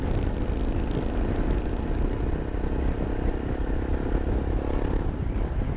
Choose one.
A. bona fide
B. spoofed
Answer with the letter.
A